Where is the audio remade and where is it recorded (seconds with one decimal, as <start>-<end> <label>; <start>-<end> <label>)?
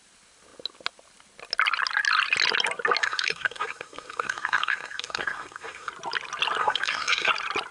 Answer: 0.0-3.0 recorded; 3.0-5.9 remade; 5.9-6.6 recorded; 6.6-7.3 remade; 7.3-7.7 recorded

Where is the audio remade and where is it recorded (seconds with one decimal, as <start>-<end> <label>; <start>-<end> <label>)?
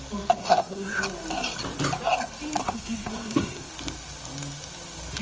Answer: 0.0-0.4 recorded; 0.4-1.0 remade; 1.0-2.6 recorded; 2.6-3.7 remade; 3.7-5.2 recorded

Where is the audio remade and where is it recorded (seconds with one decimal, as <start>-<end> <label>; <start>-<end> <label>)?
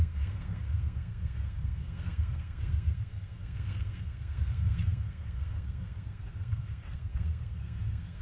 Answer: 0.0-8.2 remade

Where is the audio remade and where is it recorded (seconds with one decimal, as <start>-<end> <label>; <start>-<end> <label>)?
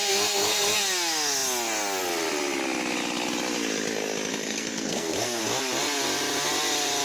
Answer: 0.0-0.8 remade; 0.8-4.3 recorded; 4.3-5.4 remade; 5.4-7.0 recorded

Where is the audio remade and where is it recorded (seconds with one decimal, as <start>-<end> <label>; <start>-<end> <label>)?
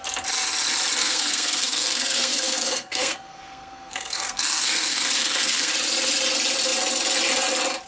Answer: 0.0-1.0 recorded; 1.0-5.7 remade; 5.7-7.9 recorded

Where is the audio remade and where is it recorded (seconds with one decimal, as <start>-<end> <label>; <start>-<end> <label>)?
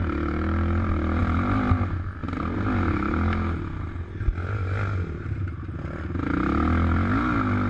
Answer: 0.0-7.7 recorded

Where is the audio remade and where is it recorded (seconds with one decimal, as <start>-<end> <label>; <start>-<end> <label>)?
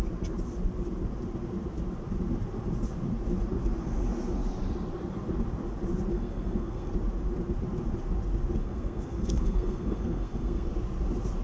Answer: 0.0-6.1 recorded; 6.1-6.9 remade; 6.9-8.6 recorded; 8.6-10.7 remade; 10.7-11.4 recorded